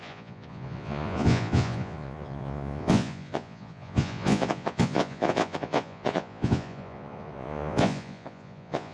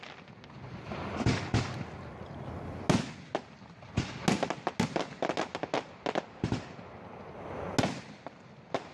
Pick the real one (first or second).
second